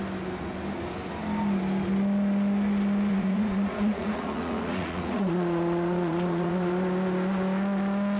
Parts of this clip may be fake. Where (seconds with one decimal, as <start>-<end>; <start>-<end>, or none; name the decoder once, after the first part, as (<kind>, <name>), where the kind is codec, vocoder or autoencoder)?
3.1-6.7 (vocoder, Vocos)

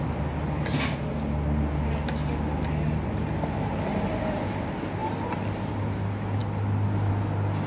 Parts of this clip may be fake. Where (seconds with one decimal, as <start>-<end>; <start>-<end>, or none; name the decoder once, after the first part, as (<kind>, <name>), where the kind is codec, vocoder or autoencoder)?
none

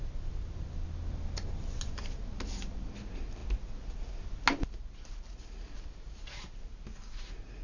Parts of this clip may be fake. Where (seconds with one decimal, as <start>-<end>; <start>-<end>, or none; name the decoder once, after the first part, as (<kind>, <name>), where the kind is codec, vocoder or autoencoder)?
none

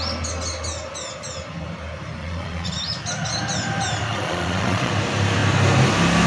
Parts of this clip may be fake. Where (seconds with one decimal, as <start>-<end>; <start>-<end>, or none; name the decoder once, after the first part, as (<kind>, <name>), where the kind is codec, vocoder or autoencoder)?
2.2-2.7 (vocoder, Vocos); 4.1-4.9

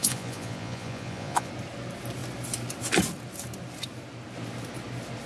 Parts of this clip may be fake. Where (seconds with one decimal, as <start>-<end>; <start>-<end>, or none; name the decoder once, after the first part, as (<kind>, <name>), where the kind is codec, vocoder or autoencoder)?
0.0-1.5 (vocoder, Vocos)

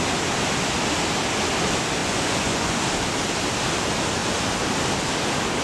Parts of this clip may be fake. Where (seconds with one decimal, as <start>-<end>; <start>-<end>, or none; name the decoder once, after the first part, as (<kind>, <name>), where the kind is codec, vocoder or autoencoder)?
2.0-2.8 (vocoder, Vocos)

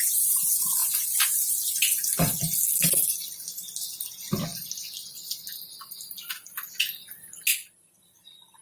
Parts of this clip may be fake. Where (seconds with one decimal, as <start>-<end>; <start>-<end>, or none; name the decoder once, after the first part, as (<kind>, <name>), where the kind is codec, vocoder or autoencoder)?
none

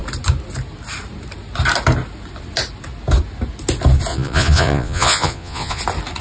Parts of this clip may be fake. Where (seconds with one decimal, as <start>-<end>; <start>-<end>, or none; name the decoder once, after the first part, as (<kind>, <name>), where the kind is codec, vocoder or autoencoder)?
4.1-5.8 (vocoder, Vocos)